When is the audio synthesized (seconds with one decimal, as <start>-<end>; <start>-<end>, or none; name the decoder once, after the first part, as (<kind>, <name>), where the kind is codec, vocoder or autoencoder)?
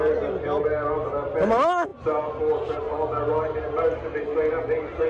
none